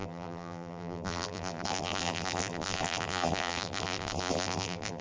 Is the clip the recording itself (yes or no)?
no